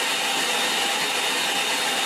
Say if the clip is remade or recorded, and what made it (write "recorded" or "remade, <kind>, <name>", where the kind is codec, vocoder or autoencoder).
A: recorded